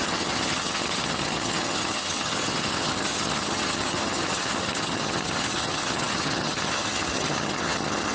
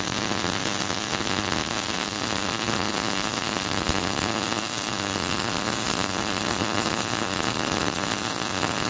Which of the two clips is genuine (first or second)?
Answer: second